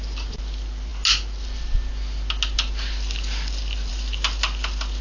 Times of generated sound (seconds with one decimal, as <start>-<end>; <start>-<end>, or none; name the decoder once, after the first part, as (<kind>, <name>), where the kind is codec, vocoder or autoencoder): none